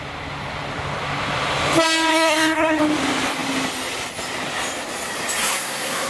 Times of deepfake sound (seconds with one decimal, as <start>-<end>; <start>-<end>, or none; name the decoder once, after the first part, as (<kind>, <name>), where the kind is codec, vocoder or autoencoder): 2.1-2.8 (codec, SNAC); 5.4-6.1